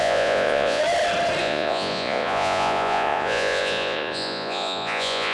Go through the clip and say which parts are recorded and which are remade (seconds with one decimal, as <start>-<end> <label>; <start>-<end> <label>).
0.0-0.8 remade; 0.8-1.4 recorded; 1.4-5.3 remade